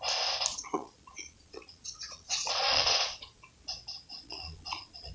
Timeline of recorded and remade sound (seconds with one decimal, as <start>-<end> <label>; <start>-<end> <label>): 0.0-0.5 recorded; 0.5-3.4 remade; 3.4-4.1 recorded; 4.1-5.1 remade